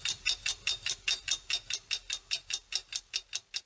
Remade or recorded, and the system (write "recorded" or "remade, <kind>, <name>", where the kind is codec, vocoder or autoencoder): recorded